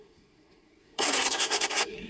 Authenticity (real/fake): fake